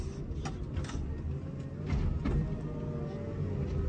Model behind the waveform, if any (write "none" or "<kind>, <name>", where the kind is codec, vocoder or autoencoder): none